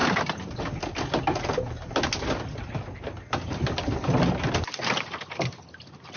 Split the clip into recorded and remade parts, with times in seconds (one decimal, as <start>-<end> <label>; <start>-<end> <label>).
0.0-6.2 recorded